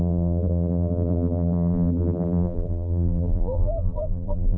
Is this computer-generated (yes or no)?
yes